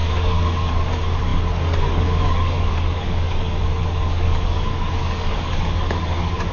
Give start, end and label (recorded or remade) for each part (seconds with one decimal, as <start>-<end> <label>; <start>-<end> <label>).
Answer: 0.0-6.5 remade